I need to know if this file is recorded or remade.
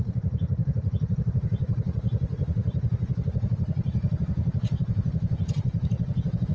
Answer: remade